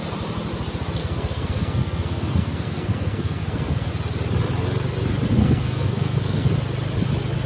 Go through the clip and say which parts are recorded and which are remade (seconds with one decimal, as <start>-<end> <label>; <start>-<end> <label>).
0.0-1.0 recorded; 1.0-3.9 remade; 3.9-5.4 recorded; 5.4-6.5 remade; 6.5-7.5 recorded